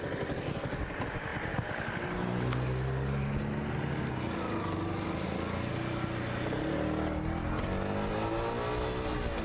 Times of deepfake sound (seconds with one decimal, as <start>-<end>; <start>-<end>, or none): none